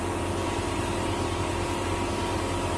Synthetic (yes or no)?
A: no